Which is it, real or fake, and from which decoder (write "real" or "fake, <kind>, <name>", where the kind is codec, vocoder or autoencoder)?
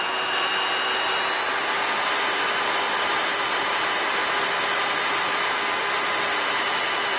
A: real